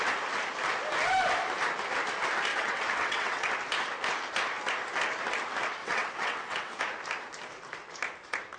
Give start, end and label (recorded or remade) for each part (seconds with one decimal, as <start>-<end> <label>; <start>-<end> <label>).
0.0-2.5 recorded; 2.5-3.5 remade; 3.5-5.8 recorded; 5.8-6.8 remade; 6.8-8.6 recorded